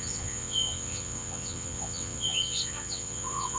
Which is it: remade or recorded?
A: remade